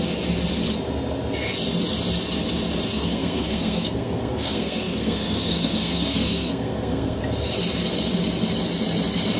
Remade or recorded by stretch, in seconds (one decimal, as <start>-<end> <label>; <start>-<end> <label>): 0.0-2.9 recorded; 2.9-7.2 remade; 7.2-9.4 recorded